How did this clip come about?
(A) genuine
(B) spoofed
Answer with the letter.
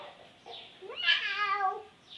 A